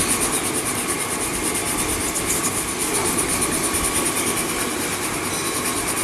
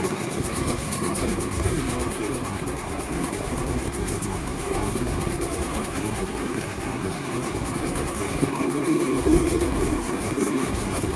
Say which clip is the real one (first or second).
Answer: first